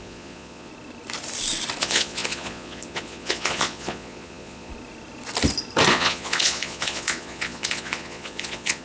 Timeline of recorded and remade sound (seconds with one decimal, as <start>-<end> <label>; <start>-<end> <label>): 0.0-0.7 remade; 0.7-1.8 recorded; 1.8-4.7 remade; 4.7-5.9 recorded; 5.9-8.8 remade